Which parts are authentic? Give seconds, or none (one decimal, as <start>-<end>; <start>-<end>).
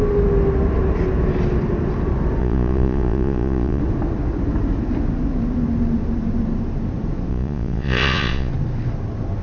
0.0-2.4; 3.8-7.3; 8.5-9.4